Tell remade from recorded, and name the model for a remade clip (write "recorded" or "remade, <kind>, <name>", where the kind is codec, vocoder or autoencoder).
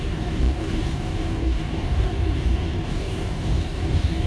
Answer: remade, codec, DAC